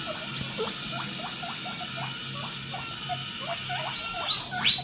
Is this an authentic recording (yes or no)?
yes